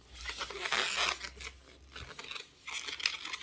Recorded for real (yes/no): yes